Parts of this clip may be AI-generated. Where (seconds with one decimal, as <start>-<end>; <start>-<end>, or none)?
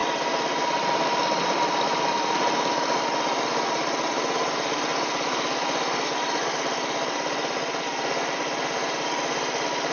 none